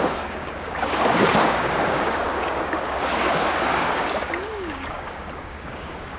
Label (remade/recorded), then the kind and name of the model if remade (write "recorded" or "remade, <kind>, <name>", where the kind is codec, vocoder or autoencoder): remade, codec, DAC